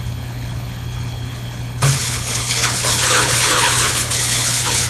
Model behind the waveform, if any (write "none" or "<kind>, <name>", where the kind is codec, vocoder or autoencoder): codec, HILCodec